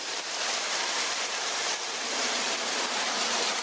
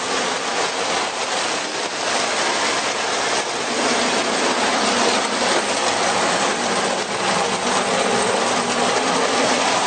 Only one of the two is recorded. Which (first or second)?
second